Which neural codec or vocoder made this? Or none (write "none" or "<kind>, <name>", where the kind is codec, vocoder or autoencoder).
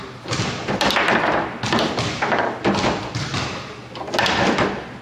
none